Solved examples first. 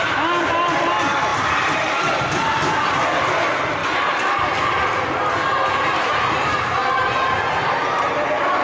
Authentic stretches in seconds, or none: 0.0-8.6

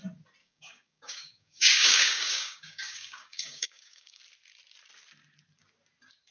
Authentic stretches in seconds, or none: 0.0-0.4; 4.2-6.3

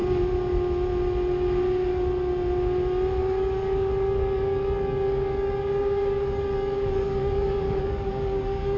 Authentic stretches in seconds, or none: 0.0-3.2

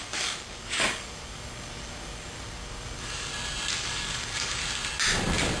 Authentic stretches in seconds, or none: 3.3-3.8; 4.6-5.6

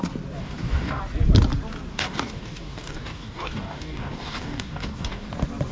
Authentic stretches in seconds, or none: 0.0-0.4; 1.0-1.9; 5.3-5.7

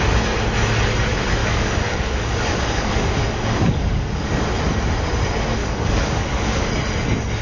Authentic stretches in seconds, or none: 0.0-1.4; 4.3-5.6; 6.7-7.4